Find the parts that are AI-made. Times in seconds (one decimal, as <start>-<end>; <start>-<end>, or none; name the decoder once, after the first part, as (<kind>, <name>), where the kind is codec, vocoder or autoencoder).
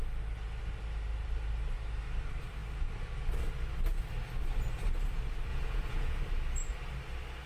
5.5-6.2 (vocoder, Vocos)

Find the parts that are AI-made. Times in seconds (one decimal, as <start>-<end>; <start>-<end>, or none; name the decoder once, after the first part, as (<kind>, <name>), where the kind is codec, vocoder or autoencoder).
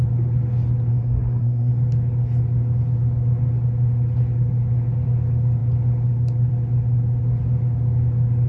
0.9-1.7 (codec, SNAC)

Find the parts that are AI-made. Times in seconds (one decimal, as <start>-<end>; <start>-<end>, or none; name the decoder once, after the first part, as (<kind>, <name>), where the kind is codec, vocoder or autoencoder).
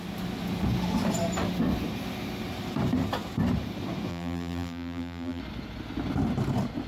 4.1-5.4 (vocoder, BigVGAN v2)